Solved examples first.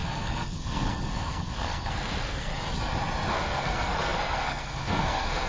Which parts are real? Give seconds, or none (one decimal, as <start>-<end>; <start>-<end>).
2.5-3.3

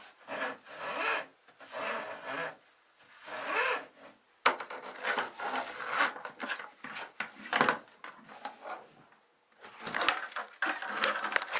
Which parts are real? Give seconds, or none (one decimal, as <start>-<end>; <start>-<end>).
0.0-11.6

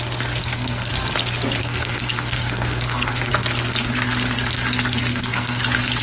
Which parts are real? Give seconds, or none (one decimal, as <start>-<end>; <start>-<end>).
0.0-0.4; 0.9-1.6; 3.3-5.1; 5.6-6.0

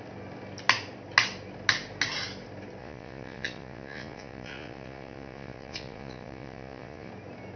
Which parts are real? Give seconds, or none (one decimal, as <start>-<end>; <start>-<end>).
0.0-2.8; 7.1-7.6